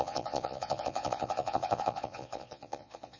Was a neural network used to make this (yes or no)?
yes